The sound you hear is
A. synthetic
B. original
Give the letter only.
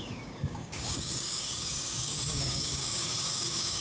A